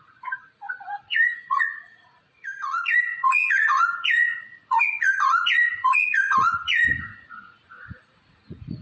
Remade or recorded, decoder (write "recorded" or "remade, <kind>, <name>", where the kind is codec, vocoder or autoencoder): remade, vocoder, Vocos